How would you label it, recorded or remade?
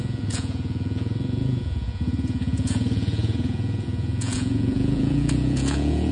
remade